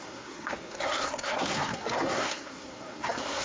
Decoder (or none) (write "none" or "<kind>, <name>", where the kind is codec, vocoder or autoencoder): codec, SNAC